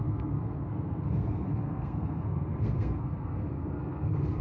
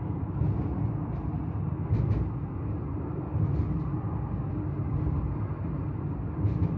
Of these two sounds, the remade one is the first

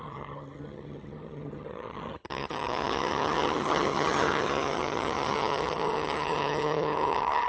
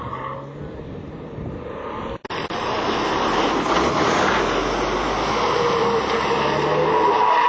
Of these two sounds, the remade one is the first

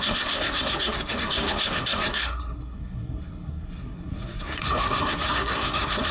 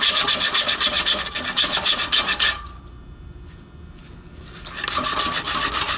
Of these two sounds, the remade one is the first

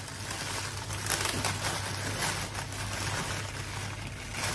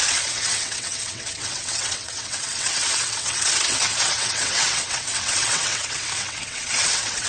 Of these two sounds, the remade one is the second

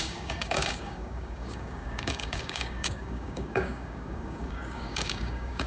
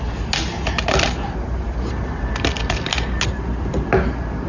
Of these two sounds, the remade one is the first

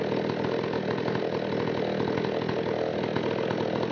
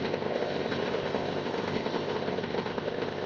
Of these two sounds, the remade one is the second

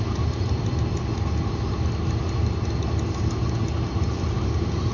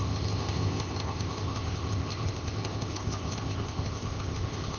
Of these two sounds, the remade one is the second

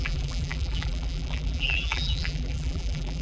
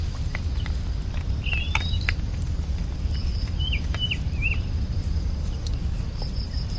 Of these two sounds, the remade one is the first